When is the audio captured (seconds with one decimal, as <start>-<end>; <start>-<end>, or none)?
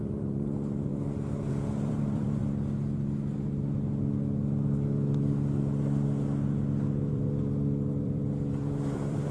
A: 0.9-1.5; 2.4-7.1